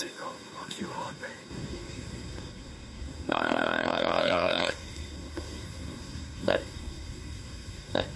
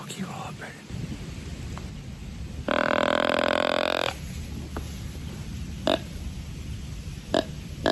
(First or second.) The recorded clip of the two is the second